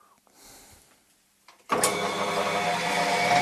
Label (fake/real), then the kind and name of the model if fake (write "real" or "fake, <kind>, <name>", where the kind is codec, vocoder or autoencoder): real